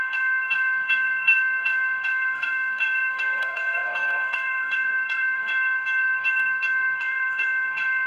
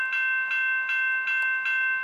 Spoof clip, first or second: first